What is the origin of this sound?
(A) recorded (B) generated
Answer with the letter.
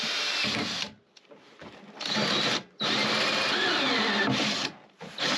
A